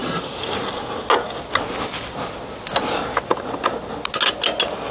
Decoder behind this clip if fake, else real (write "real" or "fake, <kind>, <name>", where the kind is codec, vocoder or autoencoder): real